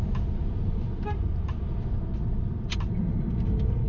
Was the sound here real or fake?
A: real